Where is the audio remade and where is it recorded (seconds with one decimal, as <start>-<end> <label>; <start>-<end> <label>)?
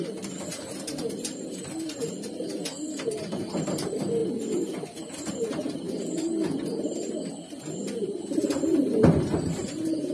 0.0-10.1 recorded